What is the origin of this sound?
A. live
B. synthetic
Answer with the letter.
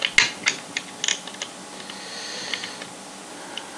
A